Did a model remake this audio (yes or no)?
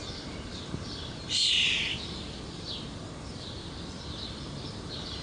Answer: no